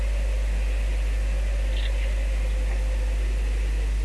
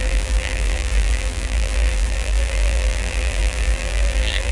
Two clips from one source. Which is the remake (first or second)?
second